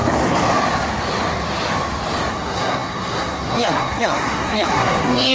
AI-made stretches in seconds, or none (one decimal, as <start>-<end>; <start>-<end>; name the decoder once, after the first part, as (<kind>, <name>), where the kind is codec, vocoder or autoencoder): 2.3-5.3 (codec, SNAC)